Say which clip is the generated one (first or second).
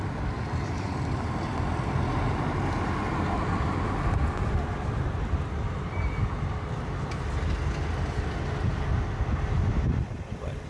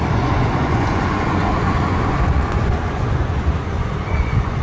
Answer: second